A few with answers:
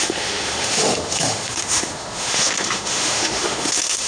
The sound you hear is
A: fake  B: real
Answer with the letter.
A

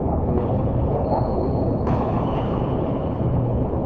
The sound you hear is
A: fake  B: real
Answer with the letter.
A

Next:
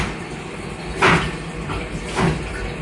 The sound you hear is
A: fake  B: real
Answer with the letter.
B